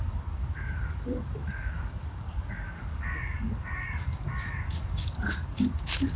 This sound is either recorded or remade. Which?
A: remade